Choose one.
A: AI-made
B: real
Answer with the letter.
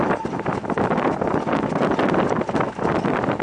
B